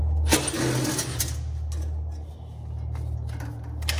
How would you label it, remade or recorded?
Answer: recorded